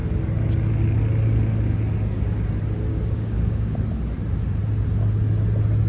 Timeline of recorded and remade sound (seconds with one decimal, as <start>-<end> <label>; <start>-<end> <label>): 0.0-2.9 recorded; 2.9-3.8 remade; 3.8-5.9 recorded